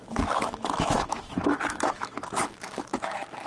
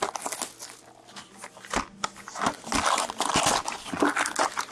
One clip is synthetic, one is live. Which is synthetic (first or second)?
first